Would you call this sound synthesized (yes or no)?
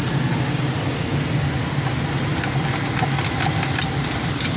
no